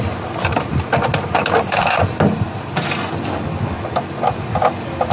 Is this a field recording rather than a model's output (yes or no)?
yes